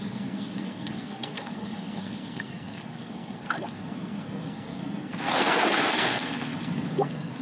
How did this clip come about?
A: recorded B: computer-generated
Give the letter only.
B